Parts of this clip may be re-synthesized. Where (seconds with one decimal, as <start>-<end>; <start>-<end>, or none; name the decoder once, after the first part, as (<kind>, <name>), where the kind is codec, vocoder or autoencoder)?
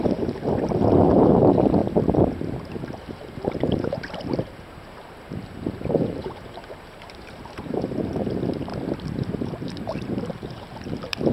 0.0-1.8 (vocoder, BigVGAN v2); 2.7-8.7; 9.3-11.3